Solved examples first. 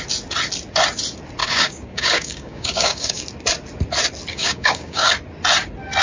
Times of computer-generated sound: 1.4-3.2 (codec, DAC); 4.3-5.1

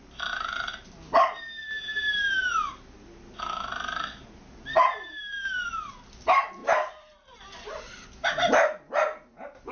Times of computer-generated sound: none

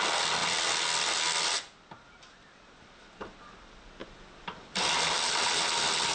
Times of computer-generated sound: none